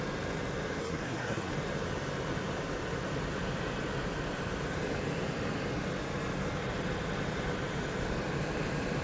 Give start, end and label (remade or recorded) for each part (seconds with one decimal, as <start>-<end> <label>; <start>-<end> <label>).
0.0-0.8 recorded; 0.8-1.5 remade; 1.5-9.0 recorded